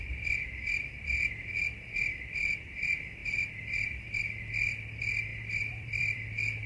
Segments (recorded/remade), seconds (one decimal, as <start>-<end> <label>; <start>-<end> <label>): 0.0-3.2 recorded; 3.2-4.2 remade; 4.2-5.3 recorded; 5.3-6.3 remade; 6.3-6.7 recorded